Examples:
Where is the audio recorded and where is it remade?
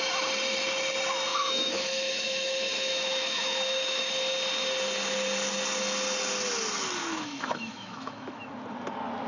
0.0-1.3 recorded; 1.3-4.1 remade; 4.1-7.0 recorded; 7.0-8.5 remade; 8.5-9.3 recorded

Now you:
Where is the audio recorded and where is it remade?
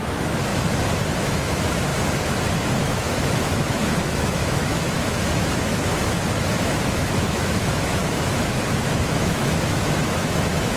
0.0-0.5 remade; 0.5-1.2 recorded; 1.2-1.9 remade; 1.9-2.8 recorded; 2.8-10.8 remade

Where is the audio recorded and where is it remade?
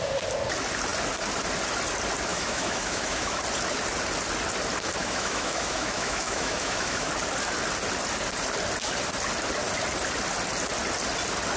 0.0-2.3 recorded; 2.3-3.4 remade; 3.4-5.0 recorded; 5.0-7.1 remade; 7.1-11.6 recorded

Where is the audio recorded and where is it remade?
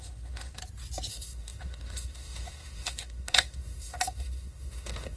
0.0-0.6 remade; 0.6-1.1 recorded; 1.1-5.2 remade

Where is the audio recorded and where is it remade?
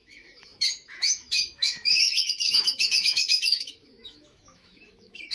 0.0-5.3 remade